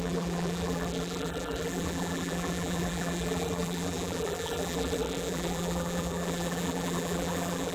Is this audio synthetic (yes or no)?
yes